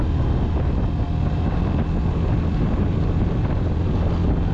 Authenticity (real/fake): real